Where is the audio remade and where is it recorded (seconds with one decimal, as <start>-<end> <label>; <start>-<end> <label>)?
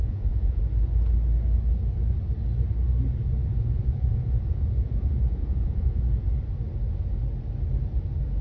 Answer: 0.0-0.6 remade; 0.6-3.4 recorded; 3.4-6.0 remade; 6.0-8.4 recorded